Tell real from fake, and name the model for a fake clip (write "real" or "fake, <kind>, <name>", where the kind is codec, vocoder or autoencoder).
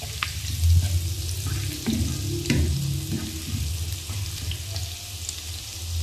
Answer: real